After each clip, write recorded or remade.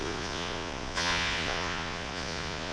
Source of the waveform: remade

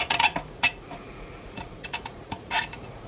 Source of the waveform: remade